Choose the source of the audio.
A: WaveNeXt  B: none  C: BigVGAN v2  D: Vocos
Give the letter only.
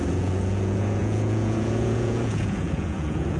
D